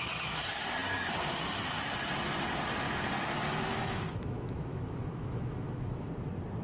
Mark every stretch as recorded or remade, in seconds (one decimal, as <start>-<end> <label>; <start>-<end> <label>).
0.0-3.7 recorded; 3.7-6.1 remade; 6.1-6.6 recorded